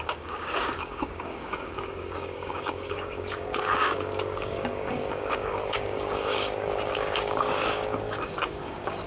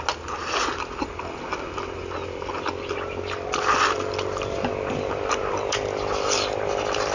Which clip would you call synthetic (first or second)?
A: first